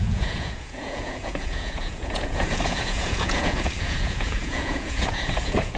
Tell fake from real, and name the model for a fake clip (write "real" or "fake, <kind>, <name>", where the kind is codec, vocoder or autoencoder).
fake, vocoder, Vocos